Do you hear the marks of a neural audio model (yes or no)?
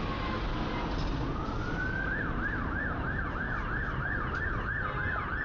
no